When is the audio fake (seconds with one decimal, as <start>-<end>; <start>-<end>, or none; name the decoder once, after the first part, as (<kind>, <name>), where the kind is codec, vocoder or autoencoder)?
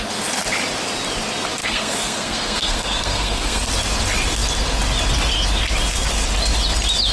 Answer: 1.6-3.7 (codec, SNAC)